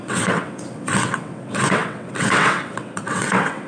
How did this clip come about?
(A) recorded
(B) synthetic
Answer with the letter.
B